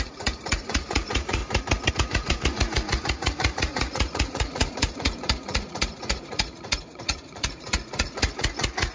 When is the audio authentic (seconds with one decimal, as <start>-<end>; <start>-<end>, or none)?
1.4-1.9